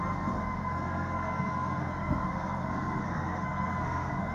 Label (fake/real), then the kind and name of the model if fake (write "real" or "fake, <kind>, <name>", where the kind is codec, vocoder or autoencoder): fake, codec, SNAC